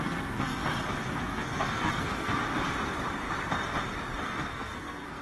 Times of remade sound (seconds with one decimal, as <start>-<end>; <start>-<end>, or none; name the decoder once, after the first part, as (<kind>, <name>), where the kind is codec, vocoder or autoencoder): 0.0-0.6 (codec, SNAC); 1.2-2.4; 4.2-5.2